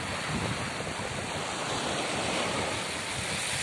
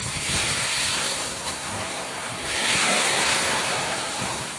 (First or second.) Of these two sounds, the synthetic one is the second